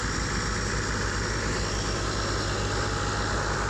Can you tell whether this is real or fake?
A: real